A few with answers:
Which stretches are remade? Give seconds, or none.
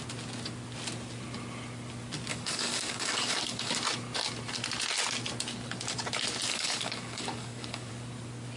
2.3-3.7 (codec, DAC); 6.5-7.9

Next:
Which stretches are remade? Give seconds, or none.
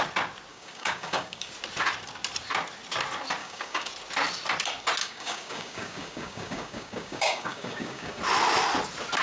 0.5-1.5 (codec, DAC); 3.4-3.9; 5.0-8.2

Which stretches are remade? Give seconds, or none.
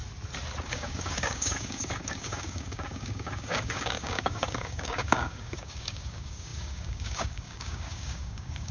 0.7-8.7 (codec, DAC)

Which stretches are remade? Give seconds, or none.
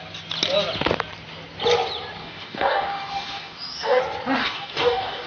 2.2-4.0 (codec, DAC); 4.4-5.3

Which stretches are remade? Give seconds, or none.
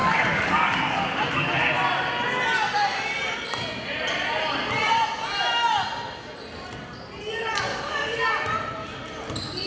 0.0-1.5 (codec, DAC); 7.7-8.3